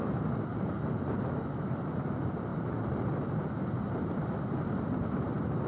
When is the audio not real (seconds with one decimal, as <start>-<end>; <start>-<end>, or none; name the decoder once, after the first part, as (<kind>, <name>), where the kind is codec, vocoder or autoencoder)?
0.5-2.1 (vocoder, BigVGAN v2); 2.5-3.3